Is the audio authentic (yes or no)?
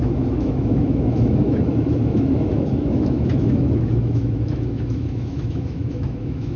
no